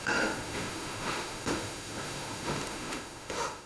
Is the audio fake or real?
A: fake